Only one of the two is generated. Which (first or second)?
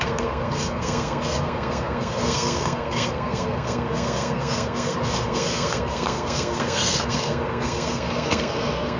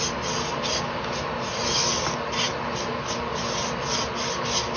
first